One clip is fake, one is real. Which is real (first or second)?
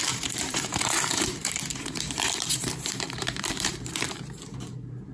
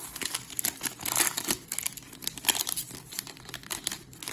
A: second